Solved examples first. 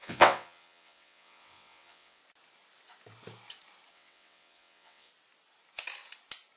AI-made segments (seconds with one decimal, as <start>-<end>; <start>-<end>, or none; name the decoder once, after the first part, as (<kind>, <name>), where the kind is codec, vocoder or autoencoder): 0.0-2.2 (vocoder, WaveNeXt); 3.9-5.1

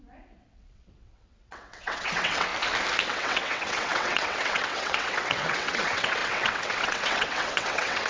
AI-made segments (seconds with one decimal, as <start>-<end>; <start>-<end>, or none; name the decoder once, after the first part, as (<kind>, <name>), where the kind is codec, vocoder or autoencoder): 0.0-2.5 (vocoder, WaveNeXt); 3.1-8.1

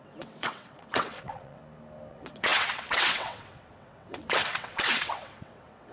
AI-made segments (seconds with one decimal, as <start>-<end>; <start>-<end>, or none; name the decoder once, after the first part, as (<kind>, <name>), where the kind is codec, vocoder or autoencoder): 0.0-1.6 (vocoder, WaveNeXt); 2.1-5.9

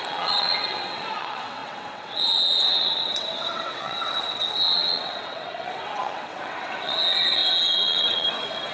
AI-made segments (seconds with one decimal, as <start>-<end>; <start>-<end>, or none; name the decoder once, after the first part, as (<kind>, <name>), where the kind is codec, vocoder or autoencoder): 0.0-8.7 (vocoder, WaveNeXt)

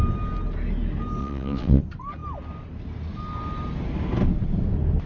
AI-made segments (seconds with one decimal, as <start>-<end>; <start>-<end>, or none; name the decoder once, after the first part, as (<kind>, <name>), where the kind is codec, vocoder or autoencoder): 1.2-1.8 (vocoder, WaveNeXt)

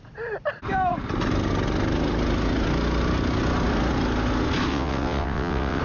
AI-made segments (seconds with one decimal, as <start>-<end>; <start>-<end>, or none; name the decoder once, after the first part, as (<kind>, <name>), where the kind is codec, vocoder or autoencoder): 4.7-5.8 (vocoder, WaveNeXt)

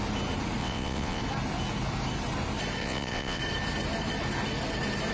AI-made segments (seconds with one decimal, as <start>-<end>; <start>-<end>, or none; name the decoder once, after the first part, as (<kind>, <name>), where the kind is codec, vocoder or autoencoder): 0.6-1.2 (vocoder, WaveNeXt); 2.8-3.4